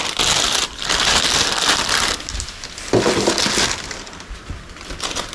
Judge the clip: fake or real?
real